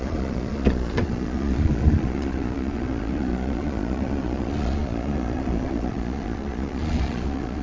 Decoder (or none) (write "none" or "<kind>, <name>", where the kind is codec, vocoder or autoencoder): vocoder, Vocos